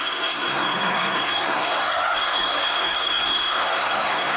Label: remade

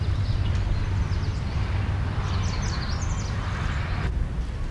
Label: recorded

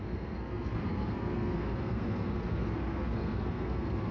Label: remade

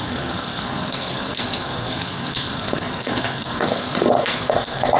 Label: remade